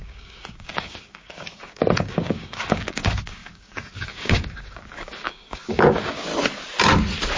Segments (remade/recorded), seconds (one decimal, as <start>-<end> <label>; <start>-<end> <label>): 0.0-6.3 remade; 6.3-7.4 recorded